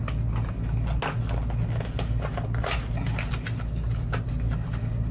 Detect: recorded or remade recorded